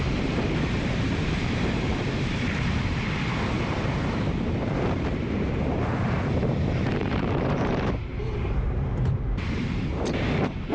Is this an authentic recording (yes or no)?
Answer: no